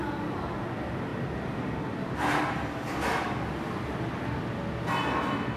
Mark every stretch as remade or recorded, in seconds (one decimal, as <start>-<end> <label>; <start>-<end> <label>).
0.0-5.6 recorded